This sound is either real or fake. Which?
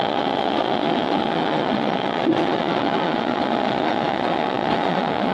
fake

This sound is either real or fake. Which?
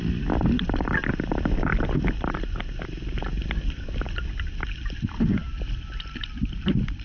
real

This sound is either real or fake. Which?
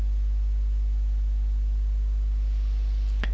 real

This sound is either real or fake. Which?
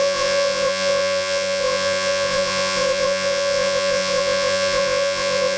fake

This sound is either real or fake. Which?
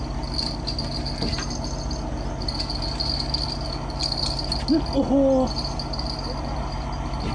real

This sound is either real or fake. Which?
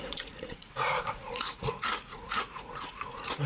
fake